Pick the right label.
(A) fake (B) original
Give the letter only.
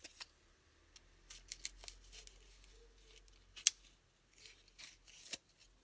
B